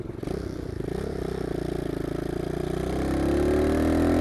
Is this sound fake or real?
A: real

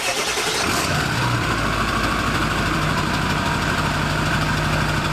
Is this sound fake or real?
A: fake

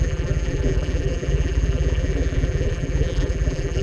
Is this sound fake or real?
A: fake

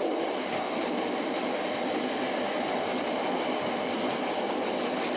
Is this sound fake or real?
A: real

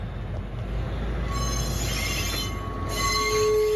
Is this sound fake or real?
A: real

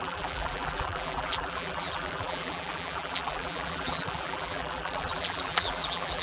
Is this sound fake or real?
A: fake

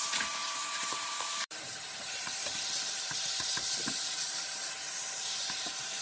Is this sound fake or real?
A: fake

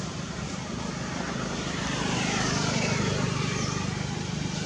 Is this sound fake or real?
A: fake